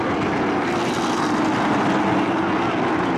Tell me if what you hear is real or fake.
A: real